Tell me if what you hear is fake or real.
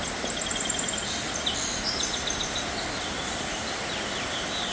real